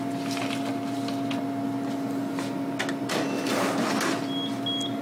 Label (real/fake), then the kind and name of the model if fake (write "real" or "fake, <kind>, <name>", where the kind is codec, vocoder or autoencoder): real